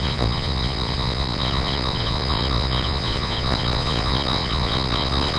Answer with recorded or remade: remade